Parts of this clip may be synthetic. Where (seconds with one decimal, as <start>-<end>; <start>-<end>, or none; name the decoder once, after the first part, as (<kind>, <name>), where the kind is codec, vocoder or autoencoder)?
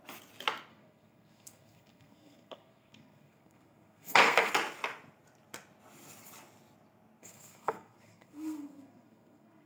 0.7-4.5 (codec, SNAC); 7.2-9.7